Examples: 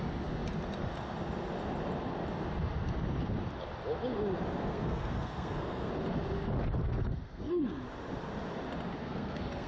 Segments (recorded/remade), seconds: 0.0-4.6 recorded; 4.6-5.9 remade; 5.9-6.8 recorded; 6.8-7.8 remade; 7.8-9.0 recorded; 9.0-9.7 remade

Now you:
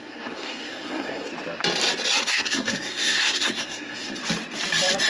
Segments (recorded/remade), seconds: 0.0-1.3 remade; 1.3-2.2 recorded; 2.2-4.2 remade; 4.2-5.1 recorded

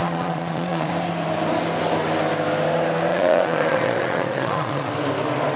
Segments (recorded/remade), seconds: 0.0-0.9 remade; 0.9-3.1 recorded; 3.1-4.9 remade; 4.9-5.6 recorded